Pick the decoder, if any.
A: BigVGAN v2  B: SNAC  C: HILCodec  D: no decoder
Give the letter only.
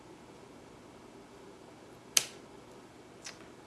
D